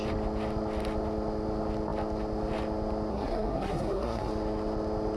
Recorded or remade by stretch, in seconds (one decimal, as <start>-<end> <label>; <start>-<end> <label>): 0.0-3.1 recorded; 3.1-4.3 remade; 4.3-5.2 recorded